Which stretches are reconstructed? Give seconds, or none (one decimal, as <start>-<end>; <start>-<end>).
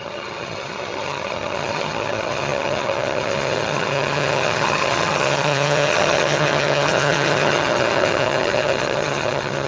0.0-9.7